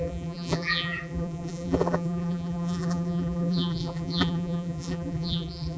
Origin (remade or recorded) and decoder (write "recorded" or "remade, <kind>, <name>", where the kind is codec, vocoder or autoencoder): remade, vocoder, BigVGAN v2